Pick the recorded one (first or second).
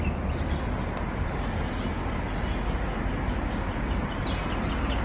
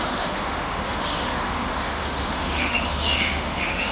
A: first